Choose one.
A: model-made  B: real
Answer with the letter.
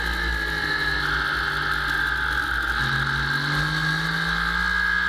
B